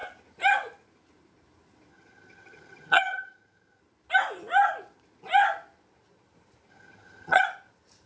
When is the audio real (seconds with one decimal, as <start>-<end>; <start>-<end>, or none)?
0.0-1.9; 3.8-6.7; 7.4-8.1